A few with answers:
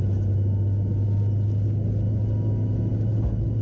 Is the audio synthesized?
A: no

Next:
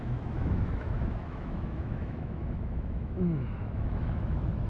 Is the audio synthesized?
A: yes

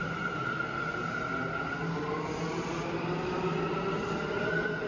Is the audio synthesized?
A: no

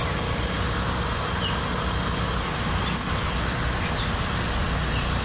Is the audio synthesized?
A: no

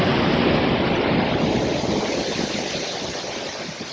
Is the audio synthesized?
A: no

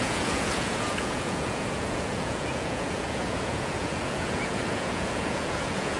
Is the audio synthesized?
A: yes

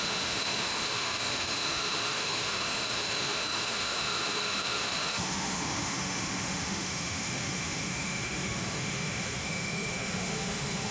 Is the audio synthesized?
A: yes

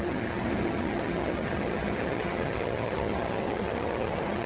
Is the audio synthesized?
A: yes